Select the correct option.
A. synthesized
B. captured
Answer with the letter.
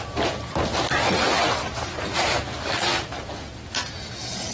B